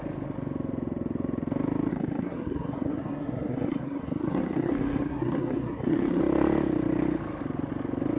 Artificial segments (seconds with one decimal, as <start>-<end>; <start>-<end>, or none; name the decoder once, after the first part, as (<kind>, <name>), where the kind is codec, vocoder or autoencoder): 1.9-6.2 (codec, SNAC)